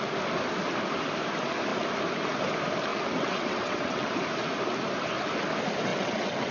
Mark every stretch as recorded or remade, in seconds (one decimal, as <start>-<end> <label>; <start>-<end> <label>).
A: 0.0-2.9 recorded; 2.9-4.2 remade; 4.2-5.9 recorded; 5.9-6.5 remade